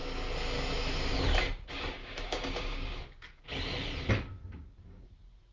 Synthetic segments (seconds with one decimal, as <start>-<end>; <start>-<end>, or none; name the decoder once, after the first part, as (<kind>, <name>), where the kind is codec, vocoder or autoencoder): 2.0-3.4 (codec, DAC); 4.3-5.1